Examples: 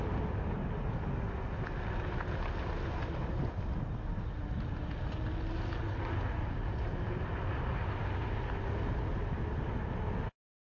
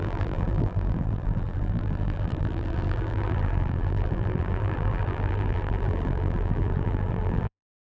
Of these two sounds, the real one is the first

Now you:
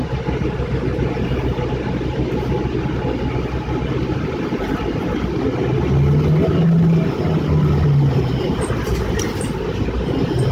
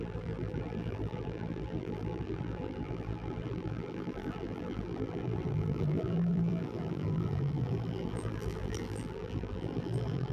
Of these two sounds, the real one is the first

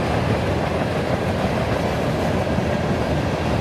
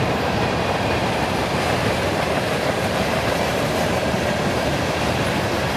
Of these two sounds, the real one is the first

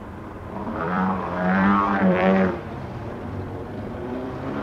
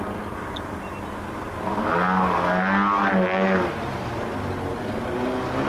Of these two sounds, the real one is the second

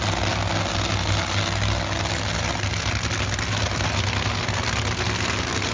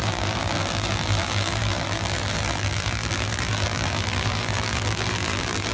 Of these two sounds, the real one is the first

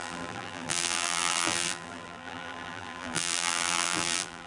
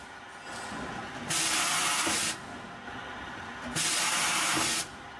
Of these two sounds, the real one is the second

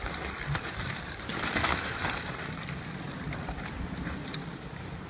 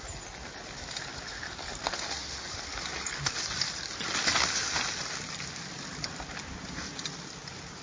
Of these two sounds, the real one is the second